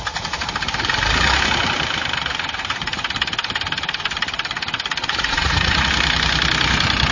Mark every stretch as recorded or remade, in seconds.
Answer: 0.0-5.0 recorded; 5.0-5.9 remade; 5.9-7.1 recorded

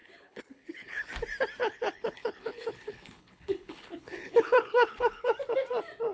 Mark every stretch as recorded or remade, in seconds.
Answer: 0.0-1.1 remade; 1.1-1.6 recorded; 1.6-5.3 remade; 5.3-6.1 recorded

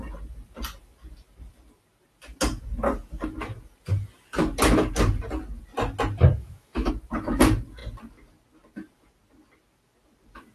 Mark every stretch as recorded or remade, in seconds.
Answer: 0.0-6.4 recorded; 6.4-6.9 remade; 6.9-10.5 recorded

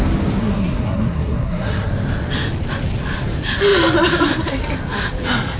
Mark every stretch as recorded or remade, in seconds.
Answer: 0.0-0.4 recorded; 0.4-1.9 remade; 1.9-5.6 recorded

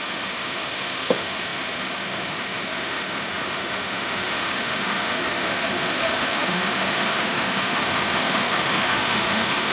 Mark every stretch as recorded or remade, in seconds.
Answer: 0.0-9.7 remade

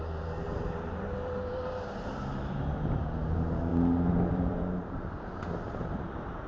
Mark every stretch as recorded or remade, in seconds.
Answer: 0.0-3.7 remade; 3.7-4.3 recorded; 4.3-6.5 remade

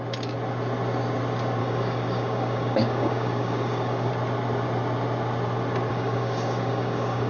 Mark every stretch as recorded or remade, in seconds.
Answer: 0.0-1.6 recorded; 1.6-4.1 remade; 4.1-5.9 recorded; 5.9-7.3 remade